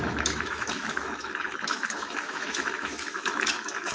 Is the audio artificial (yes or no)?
yes